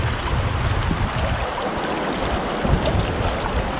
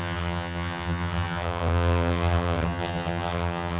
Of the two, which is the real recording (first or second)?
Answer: first